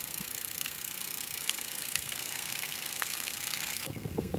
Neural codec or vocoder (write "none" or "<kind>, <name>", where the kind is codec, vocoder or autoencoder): codec, SNAC